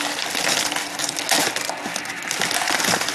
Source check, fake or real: real